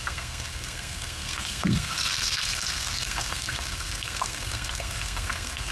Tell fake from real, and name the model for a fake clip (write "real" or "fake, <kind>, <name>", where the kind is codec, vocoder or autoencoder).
fake, codec, SNAC